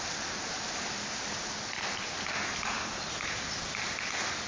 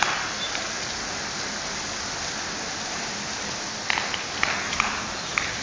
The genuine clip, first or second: first